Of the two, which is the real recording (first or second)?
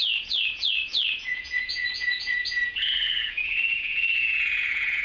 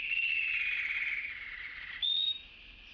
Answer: second